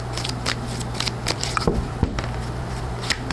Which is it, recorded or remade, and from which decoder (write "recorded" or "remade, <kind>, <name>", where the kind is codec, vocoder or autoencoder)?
remade, vocoder, BigVGAN v2